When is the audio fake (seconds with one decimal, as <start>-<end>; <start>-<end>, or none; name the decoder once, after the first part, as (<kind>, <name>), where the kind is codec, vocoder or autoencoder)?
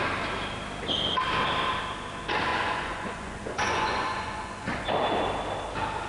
2.5-4.9 (vocoder, Vocos)